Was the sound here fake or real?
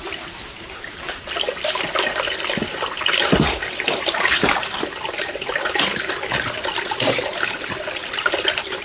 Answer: real